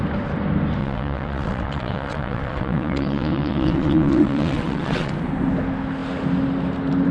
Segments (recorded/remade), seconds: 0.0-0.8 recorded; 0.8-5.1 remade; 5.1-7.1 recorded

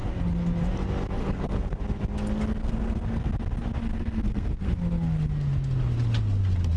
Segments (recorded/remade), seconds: 0.0-1.2 recorded; 1.2-1.8 remade; 1.8-2.6 recorded; 2.6-3.2 remade; 3.2-3.9 recorded; 3.9-4.7 remade; 4.7-6.8 recorded